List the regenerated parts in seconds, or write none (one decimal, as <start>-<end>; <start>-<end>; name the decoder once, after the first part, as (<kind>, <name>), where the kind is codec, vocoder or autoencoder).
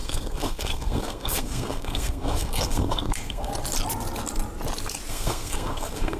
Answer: 0.0-3.5 (codec, SNAC); 5.1-6.2